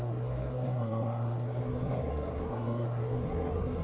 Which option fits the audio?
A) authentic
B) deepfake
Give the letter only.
B